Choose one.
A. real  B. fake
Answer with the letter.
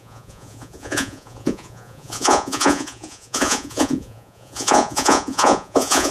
B